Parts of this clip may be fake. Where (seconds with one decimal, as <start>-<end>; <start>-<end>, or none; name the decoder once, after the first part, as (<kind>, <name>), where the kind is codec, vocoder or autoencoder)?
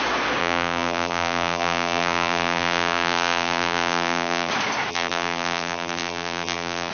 0.4-4.5 (vocoder, BigVGAN v2); 4.9-6.9